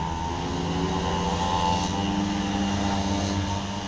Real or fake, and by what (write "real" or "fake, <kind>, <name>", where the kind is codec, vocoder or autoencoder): real